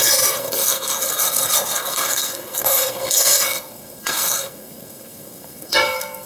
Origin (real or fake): fake